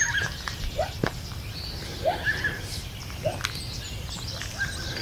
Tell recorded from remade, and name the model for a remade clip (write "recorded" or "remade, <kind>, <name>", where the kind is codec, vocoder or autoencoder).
recorded